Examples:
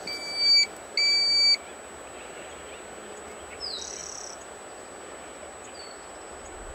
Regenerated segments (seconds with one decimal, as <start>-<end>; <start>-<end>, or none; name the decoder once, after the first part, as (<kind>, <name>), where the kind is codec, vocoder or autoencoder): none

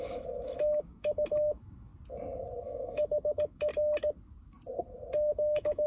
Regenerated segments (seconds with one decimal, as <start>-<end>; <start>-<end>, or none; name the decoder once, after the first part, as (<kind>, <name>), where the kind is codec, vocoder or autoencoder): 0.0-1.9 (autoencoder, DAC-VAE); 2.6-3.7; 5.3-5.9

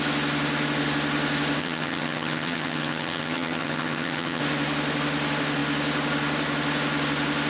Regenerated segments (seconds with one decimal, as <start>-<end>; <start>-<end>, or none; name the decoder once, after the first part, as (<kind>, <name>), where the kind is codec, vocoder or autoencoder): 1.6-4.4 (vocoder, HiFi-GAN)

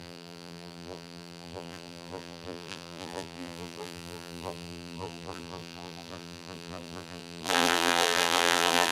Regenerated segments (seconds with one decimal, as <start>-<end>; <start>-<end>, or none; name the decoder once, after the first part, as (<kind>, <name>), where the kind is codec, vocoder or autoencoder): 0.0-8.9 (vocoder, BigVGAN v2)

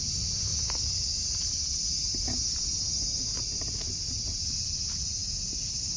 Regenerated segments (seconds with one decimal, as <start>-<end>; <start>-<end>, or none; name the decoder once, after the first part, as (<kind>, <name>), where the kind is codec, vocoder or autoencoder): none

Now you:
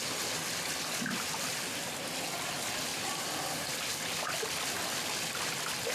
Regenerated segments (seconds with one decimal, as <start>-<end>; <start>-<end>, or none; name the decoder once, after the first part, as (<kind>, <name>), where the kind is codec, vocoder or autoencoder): 2.9-5.5 (vocoder, BigVGAN v2)